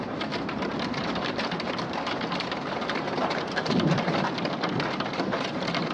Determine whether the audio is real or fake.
fake